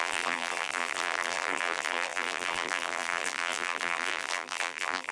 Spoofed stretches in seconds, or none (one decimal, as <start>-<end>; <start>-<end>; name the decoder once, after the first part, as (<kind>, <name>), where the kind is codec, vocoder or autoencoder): 0.0-5.1 (vocoder, BigVGAN v2)